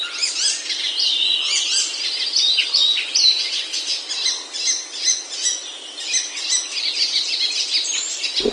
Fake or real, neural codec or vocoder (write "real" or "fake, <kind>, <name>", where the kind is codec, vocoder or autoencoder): real